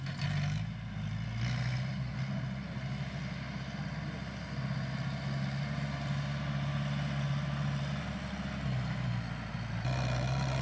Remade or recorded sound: recorded